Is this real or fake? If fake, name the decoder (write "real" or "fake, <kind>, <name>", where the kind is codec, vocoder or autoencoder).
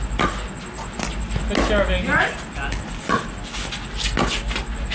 real